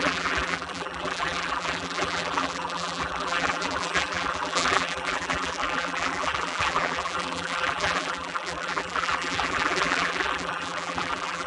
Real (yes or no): no